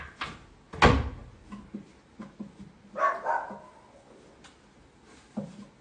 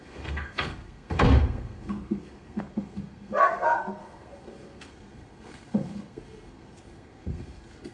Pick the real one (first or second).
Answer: first